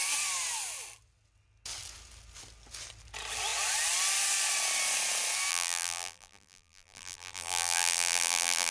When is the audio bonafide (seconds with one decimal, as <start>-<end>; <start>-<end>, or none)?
0.0-5.5